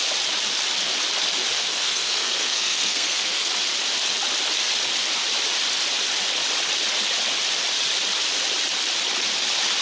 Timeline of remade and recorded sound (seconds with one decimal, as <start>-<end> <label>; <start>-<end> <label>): 0.0-1.6 recorded; 1.6-3.5 remade; 3.5-9.8 recorded